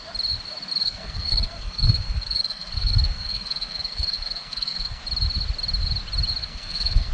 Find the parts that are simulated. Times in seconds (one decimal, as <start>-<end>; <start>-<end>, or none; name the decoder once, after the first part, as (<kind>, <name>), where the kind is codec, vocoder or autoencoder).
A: 0.8-5.0 (codec, SNAC); 6.4-7.1